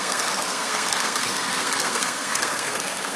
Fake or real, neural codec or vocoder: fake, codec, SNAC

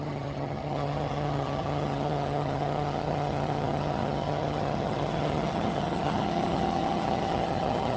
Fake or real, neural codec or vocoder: fake, vocoder, HiFi-GAN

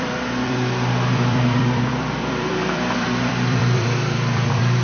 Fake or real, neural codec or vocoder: fake, vocoder, BigVGAN v2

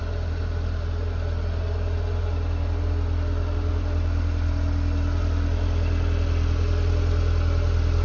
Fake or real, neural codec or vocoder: real